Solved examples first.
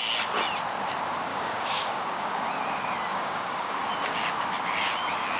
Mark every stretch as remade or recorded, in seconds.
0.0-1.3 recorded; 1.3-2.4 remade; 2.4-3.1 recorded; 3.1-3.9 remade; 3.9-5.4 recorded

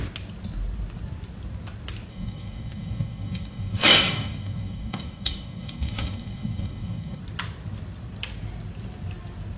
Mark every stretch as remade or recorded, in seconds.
0.0-2.1 recorded; 2.1-7.2 remade; 7.2-9.6 recorded

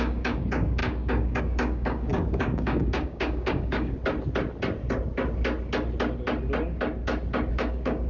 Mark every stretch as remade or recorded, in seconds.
0.0-4.0 remade; 4.0-7.5 recorded; 7.5-8.1 remade

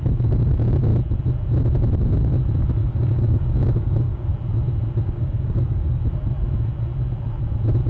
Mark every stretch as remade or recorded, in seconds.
0.0-0.9 remade; 0.9-2.9 recorded; 2.9-4.3 remade; 4.3-5.0 recorded; 5.0-6.0 remade; 6.0-7.9 recorded

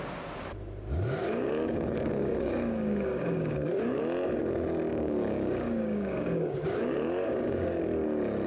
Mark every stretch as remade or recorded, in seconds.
0.0-1.2 recorded; 1.2-4.0 remade; 4.0-4.9 recorded; 4.9-7.8 remade; 7.8-8.5 recorded

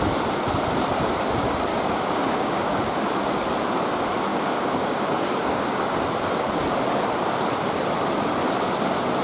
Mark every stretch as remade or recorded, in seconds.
0.0-1.7 recorded; 1.7-3.0 remade; 3.0-4.3 recorded; 4.3-5.7 remade; 5.7-9.2 recorded

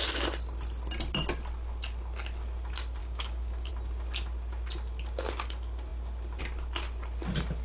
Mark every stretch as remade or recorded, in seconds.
0.0-3.0 recorded; 3.0-3.7 remade; 3.7-7.6 recorded

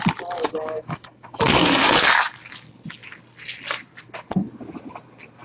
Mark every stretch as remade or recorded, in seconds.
0.0-0.4 recorded; 0.4-1.9 remade; 1.9-5.4 recorded